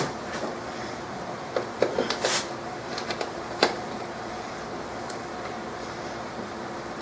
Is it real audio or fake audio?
fake